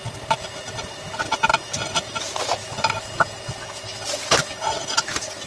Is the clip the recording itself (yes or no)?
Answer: yes